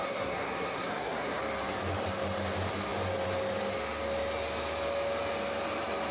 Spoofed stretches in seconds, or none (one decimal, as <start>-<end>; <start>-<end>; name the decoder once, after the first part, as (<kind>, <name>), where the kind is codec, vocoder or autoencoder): 0.0-1.4 (codec, SNAC)